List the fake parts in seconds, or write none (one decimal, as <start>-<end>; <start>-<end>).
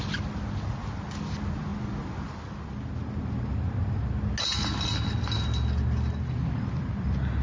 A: none